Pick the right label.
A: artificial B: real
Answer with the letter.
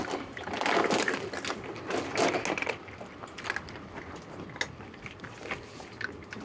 B